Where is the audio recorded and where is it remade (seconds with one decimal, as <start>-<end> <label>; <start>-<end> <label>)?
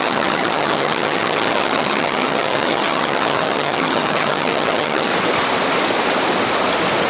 0.0-5.1 remade; 5.1-7.1 recorded